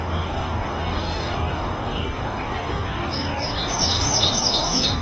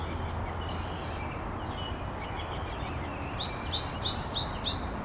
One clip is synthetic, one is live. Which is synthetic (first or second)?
first